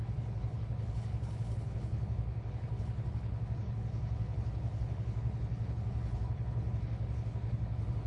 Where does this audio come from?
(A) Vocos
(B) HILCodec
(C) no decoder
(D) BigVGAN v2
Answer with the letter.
B